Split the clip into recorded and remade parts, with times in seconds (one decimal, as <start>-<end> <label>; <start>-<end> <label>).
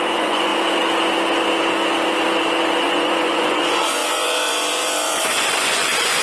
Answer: 0.0-0.5 remade; 0.5-2.8 recorded; 2.8-6.2 remade